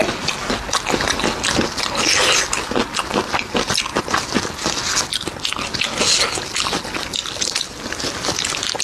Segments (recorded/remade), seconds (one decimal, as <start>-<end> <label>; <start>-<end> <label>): 0.0-8.8 recorded